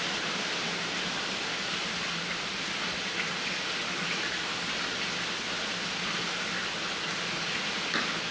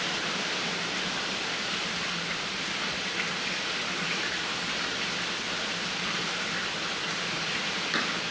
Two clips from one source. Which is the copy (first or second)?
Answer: second